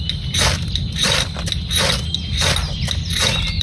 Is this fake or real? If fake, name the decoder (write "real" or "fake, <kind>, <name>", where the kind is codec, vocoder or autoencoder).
real